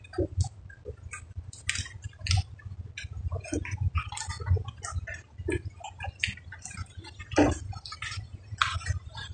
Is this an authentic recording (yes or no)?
yes